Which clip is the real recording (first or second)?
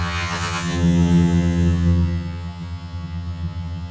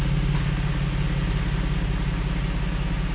second